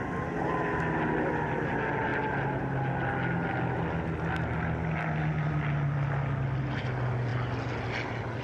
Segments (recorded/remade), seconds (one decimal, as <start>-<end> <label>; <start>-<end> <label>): 0.0-8.4 recorded